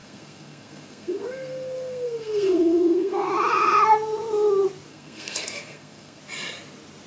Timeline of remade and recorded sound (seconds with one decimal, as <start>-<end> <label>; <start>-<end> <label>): 0.0-3.3 remade; 3.3-4.9 recorded; 4.9-6.2 remade; 6.2-7.1 recorded